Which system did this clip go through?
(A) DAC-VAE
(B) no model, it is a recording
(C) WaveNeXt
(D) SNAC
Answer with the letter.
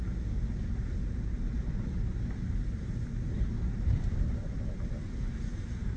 B